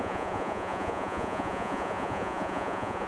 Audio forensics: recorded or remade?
remade